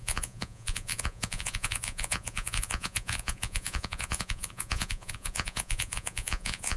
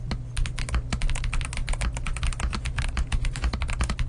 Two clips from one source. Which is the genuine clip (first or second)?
second